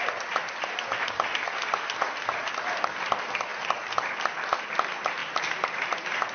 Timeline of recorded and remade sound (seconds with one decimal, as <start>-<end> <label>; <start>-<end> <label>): 0.0-6.3 recorded

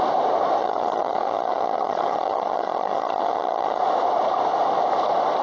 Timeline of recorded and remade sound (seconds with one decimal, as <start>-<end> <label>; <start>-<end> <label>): 0.0-0.6 recorded; 0.6-3.8 remade; 3.8-5.4 recorded

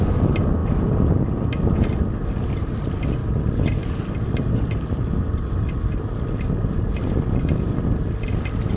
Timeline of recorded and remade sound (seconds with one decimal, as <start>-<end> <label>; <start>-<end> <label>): 0.0-8.8 recorded

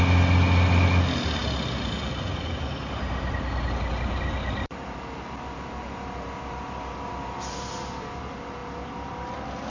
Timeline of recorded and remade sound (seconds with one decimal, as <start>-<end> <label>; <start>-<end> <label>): 0.0-9.7 recorded